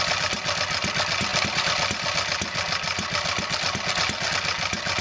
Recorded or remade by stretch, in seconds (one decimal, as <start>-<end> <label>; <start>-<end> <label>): 0.0-5.0 recorded

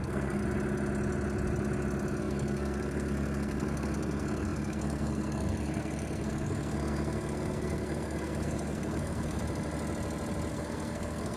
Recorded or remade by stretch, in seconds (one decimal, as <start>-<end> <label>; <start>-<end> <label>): 0.0-0.4 remade; 0.4-2.2 recorded; 2.2-9.4 remade; 9.4-10.5 recorded; 10.5-11.4 remade

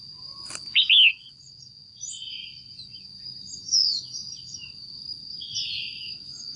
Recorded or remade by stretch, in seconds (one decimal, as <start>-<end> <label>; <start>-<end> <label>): 0.0-4.2 recorded; 4.2-5.9 remade; 5.9-6.6 recorded

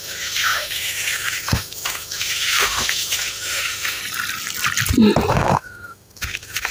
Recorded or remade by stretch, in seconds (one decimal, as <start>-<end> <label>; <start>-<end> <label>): 0.0-4.0 remade; 4.0-5.3 recorded; 5.3-6.7 remade

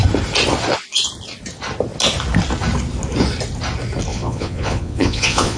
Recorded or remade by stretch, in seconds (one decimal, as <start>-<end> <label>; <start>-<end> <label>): 0.0-4.1 recorded; 4.1-5.6 remade

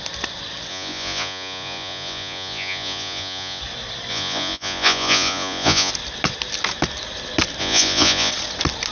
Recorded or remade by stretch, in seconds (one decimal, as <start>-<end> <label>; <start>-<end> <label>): 0.0-0.7 recorded; 0.7-3.6 remade; 3.6-4.1 recorded; 4.1-5.9 remade; 5.9-7.6 recorded; 7.6-8.3 remade; 8.3-8.9 recorded

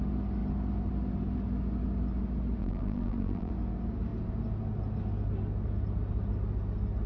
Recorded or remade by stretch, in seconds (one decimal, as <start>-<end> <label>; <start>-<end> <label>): 0.0-2.6 recorded; 2.6-3.5 remade; 3.5-7.1 recorded